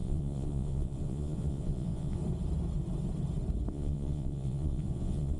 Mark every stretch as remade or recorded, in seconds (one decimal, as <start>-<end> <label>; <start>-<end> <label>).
0.0-2.2 remade; 2.2-3.7 recorded; 3.7-5.4 remade